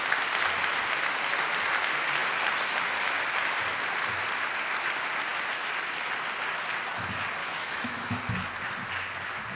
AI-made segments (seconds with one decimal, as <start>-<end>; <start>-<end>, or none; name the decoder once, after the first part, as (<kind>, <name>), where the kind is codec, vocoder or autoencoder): 7.4-8.2 (autoencoder, DAC-VAE)